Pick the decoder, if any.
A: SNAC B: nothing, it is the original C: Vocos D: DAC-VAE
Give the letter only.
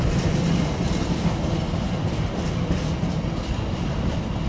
B